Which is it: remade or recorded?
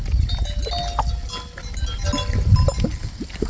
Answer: recorded